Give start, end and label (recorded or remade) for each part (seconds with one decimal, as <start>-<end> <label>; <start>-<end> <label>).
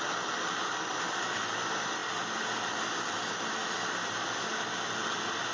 0.0-5.5 recorded